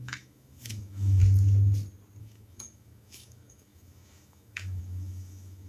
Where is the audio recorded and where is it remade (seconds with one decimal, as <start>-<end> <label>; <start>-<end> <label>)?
0.0-1.2 remade; 1.2-2.2 recorded; 2.2-5.7 remade